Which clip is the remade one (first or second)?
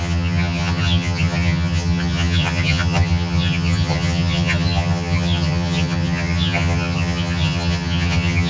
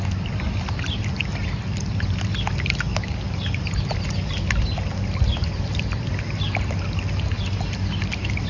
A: first